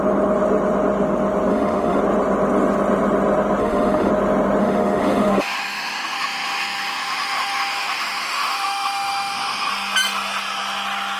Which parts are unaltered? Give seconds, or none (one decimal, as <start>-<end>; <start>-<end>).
0.0-1.5; 2.0-3.6; 4.1-4.6; 9.7-11.2